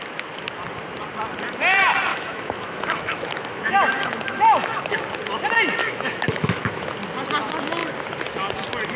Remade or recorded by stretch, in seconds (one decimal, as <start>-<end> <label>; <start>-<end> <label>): 0.0-2.1 recorded; 2.1-5.0 remade; 5.0-5.8 recorded; 5.8-6.9 remade; 6.9-9.0 recorded